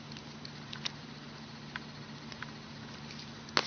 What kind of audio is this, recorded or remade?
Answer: recorded